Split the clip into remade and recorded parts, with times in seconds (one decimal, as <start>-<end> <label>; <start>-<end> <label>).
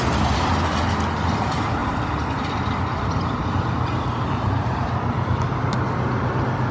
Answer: 0.0-1.8 recorded; 1.8-5.7 remade; 5.7-6.7 recorded